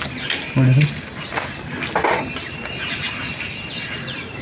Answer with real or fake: real